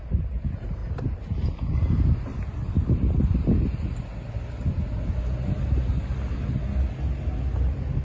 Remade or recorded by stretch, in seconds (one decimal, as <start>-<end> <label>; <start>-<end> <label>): 0.0-8.0 recorded

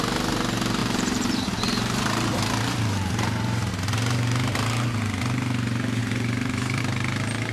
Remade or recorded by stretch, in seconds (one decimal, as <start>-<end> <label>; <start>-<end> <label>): 0.0-0.8 recorded; 0.8-3.7 remade; 3.7-6.0 recorded; 6.0-6.8 remade; 6.8-7.5 recorded

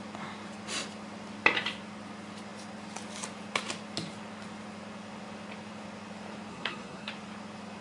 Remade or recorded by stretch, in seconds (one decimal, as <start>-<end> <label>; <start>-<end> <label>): 0.0-6.5 recorded; 6.5-7.1 remade; 7.1-7.8 recorded

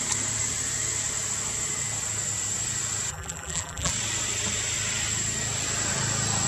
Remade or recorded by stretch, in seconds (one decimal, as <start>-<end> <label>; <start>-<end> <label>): 0.0-3.1 recorded; 3.1-3.9 remade; 3.9-6.5 recorded

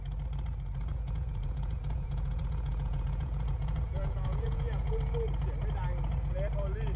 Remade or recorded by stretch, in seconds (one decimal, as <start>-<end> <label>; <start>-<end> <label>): 0.0-0.9 recorded; 0.9-5.0 remade; 5.0-7.0 recorded

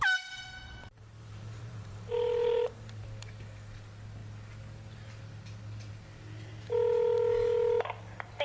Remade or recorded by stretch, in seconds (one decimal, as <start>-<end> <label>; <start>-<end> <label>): 0.0-0.8 recorded; 0.8-3.0 remade; 3.0-8.4 recorded

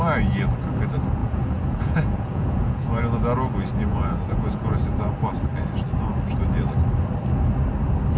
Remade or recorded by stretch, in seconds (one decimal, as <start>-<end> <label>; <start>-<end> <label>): 0.0-1.2 recorded; 1.2-3.0 remade; 3.0-3.9 recorded; 3.9-4.8 remade; 4.8-8.2 recorded